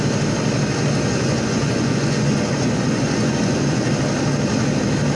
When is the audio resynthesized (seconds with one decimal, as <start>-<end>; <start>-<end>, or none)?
1.1-3.9